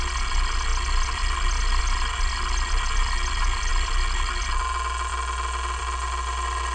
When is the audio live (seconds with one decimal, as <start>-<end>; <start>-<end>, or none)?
0.0-6.7